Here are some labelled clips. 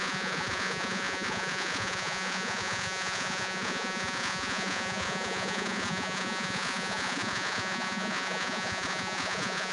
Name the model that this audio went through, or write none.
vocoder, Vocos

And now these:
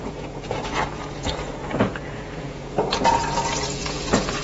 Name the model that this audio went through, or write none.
vocoder, Vocos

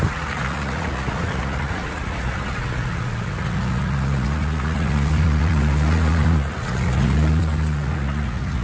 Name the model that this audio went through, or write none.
vocoder, Vocos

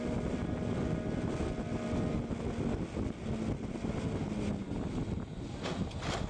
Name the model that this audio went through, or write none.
none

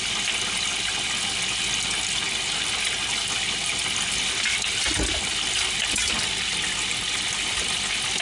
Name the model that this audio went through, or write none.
none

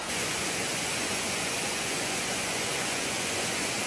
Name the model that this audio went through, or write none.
vocoder, Vocos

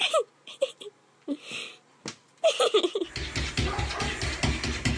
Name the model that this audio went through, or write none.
none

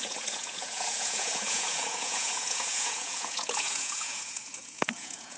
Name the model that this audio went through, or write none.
vocoder, Vocos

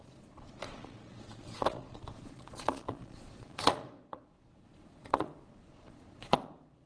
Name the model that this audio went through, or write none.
vocoder, Vocos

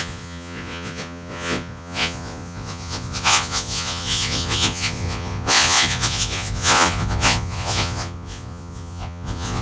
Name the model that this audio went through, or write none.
vocoder, Vocos